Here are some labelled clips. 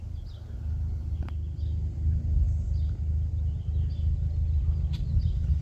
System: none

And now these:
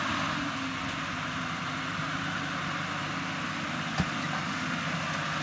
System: none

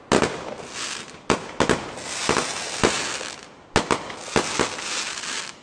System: none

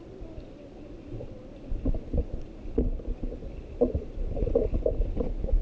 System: none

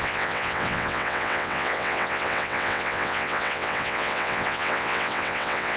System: vocoder, WaveNeXt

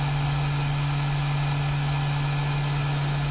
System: none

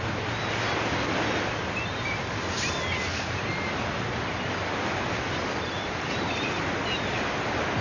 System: none